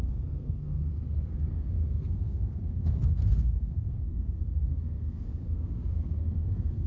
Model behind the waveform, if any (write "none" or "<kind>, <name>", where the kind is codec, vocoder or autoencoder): codec, SNAC